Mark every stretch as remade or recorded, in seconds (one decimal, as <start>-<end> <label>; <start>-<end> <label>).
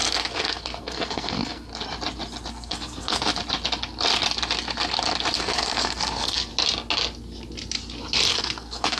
0.0-1.7 remade; 1.7-2.5 recorded; 2.5-3.3 remade; 3.3-5.4 recorded; 5.4-6.5 remade; 6.5-8.3 recorded; 8.3-9.0 remade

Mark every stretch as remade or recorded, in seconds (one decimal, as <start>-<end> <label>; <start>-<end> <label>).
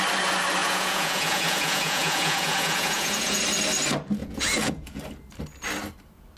0.0-0.6 recorded; 0.6-3.4 remade; 3.4-4.2 recorded; 4.2-5.0 remade; 5.0-6.4 recorded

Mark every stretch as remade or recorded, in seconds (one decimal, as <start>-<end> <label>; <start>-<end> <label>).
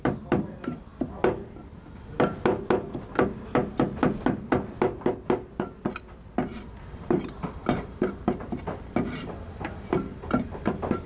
0.0-6.5 recorded; 6.5-10.6 remade; 10.6-11.1 recorded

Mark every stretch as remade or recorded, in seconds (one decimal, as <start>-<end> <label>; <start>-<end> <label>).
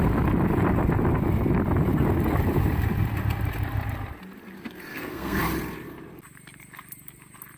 0.0-4.9 recorded; 4.9-5.4 remade; 5.4-7.6 recorded